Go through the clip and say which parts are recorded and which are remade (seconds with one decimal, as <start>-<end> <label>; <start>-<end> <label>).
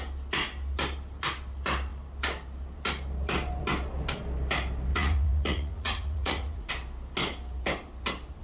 0.0-4.9 recorded; 4.9-6.7 remade; 6.7-8.4 recorded